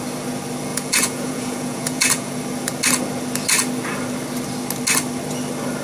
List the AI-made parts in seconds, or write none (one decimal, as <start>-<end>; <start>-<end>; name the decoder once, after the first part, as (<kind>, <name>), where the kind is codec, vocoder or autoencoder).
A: 0.7-2.3 (vocoder, Vocos)